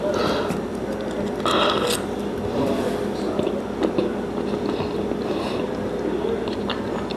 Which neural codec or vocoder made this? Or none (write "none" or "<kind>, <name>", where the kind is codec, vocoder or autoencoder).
none